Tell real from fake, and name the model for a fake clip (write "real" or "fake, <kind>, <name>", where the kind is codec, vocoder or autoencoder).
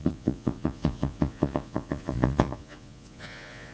fake, vocoder, Vocos